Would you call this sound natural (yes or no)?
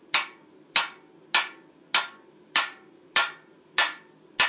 yes